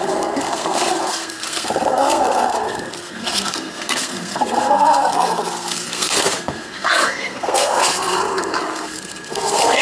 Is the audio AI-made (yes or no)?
yes